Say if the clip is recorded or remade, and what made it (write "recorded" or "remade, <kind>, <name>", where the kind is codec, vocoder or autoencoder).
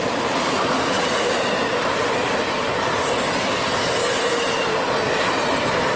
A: recorded